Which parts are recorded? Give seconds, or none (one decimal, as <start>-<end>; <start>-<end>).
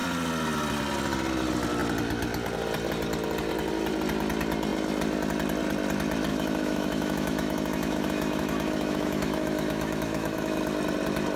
0.0-6.3; 10.6-11.4